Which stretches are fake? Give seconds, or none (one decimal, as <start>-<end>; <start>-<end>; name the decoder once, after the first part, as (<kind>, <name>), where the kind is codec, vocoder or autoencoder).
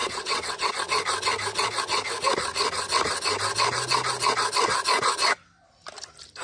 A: 0.0-0.7 (vocoder, WaveNeXt)